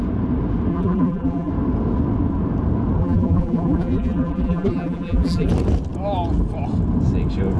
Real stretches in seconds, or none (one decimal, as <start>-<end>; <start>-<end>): 0.0-0.7; 1.5-3.0; 5.5-7.6